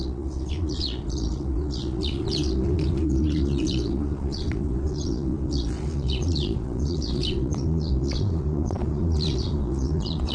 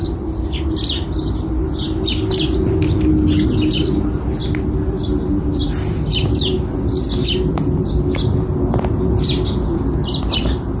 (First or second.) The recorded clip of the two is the second